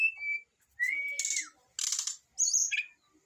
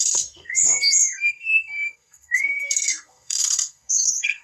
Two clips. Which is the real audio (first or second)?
first